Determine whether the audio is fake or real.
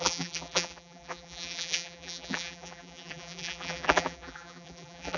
fake